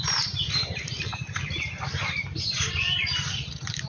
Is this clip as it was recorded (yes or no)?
no